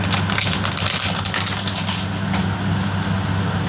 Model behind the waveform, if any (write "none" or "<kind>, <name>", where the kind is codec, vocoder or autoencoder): none